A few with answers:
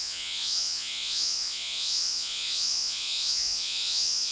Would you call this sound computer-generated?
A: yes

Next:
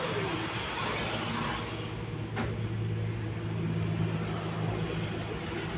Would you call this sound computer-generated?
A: no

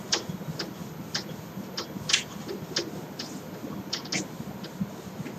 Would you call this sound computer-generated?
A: no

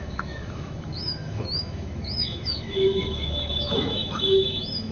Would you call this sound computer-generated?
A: yes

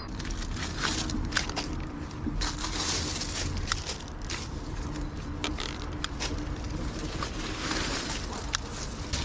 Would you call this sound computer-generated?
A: no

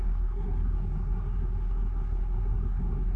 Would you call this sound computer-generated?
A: yes